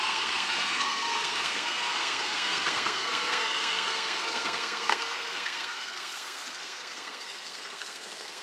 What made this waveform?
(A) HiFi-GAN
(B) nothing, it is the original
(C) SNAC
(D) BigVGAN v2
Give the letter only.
C